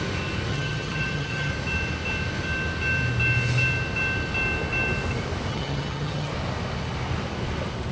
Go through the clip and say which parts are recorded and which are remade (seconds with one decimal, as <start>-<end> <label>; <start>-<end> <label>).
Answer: 0.0-0.5 recorded; 0.5-1.5 remade; 1.5-5.5 recorded; 5.5-6.3 remade; 6.3-7.9 recorded